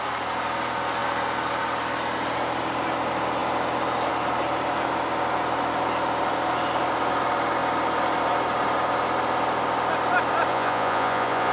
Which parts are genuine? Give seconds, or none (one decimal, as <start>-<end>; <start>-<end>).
0.0-10.5